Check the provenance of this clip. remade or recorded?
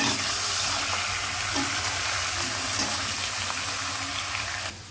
recorded